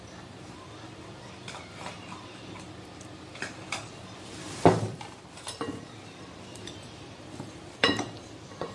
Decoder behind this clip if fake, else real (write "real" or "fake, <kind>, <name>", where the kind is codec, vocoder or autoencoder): fake, vocoder, BigVGAN v2